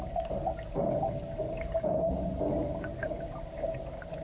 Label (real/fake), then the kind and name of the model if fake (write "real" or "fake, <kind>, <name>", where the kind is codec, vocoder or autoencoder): real